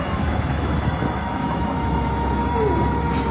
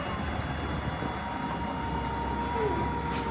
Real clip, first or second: second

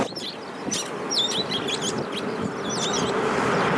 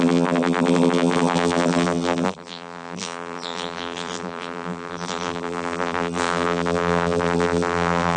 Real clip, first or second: first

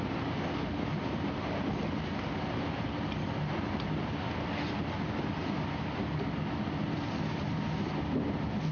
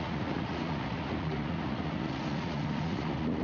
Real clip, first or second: first